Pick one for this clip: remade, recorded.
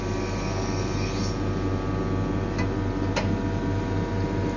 recorded